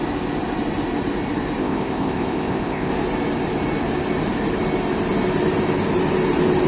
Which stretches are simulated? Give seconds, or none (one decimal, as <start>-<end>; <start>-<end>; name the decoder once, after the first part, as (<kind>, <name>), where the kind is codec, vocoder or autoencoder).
1.6-2.9 (codec, ZipCodec)